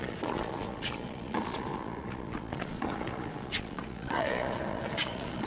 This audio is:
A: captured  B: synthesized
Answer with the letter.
B